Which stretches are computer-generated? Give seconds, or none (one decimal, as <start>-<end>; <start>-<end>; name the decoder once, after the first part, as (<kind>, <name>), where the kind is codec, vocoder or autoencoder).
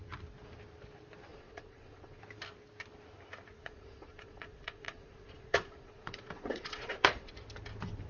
1.3-2.2 (vocoder, Vocos); 3.5-7.3